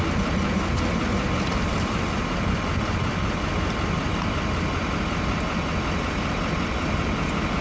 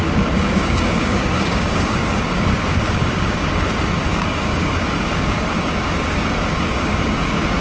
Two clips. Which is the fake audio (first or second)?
second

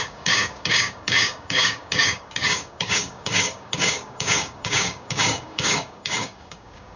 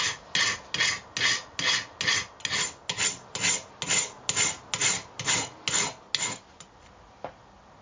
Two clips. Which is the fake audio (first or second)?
first